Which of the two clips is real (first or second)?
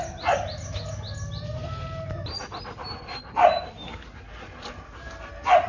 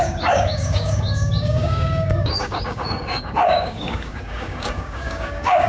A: first